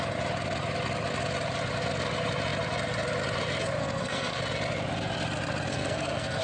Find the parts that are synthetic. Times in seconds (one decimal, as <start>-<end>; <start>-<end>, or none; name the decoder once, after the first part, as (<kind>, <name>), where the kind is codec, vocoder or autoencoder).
3.8-4.4 (codec, SNAC); 5.7-6.4